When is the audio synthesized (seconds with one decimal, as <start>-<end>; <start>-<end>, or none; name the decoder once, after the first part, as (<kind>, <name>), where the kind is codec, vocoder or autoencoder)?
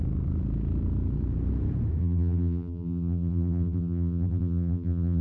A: 2.0-5.2 (vocoder, BigVGAN v2)